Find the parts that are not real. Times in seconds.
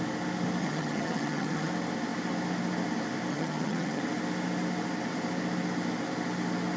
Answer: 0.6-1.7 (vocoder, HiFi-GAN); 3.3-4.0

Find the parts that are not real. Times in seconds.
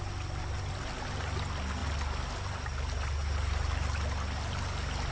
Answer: none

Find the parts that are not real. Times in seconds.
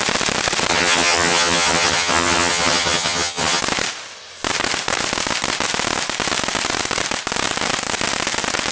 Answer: 0.7-3.6 (vocoder, HiFi-GAN)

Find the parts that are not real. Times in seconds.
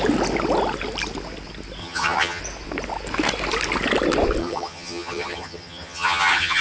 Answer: 1.8-2.4 (vocoder, HiFi-GAN); 4.4-6.6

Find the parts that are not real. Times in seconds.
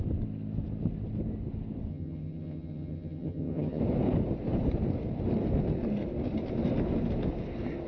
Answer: 1.9-3.8 (vocoder, HiFi-GAN)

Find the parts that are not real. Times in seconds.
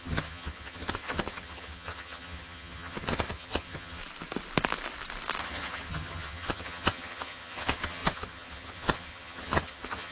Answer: 0.0-4.0 (vocoder, HiFi-GAN); 5.4-10.1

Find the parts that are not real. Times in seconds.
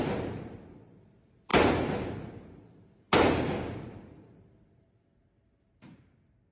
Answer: none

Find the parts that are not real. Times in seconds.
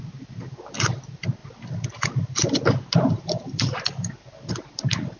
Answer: none